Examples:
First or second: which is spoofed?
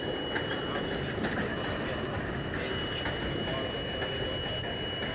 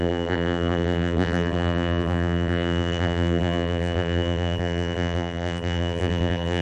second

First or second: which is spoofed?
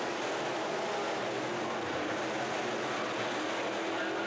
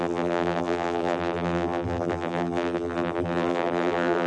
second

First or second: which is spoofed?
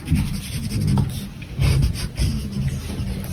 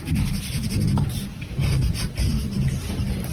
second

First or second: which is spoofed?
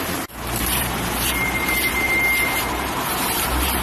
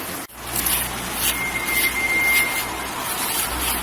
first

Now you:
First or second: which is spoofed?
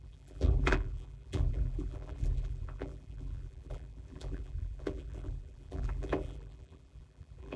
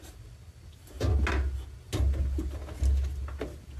first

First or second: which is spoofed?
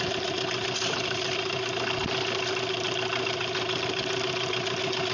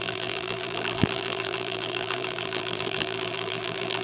second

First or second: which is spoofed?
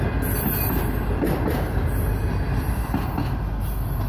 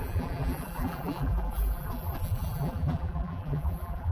second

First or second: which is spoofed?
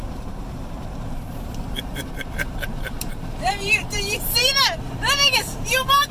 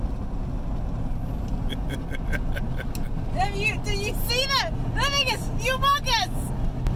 first